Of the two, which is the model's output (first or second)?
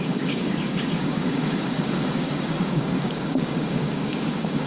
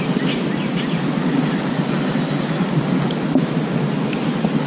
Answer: first